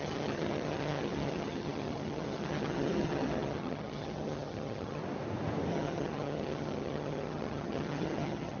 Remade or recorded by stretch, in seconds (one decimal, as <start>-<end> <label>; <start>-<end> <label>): 0.0-5.0 remade; 5.0-5.7 recorded; 5.7-8.6 remade